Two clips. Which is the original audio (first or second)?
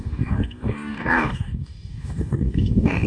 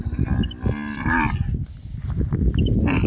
second